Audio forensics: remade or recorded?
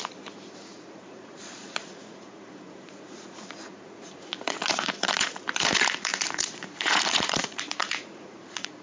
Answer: remade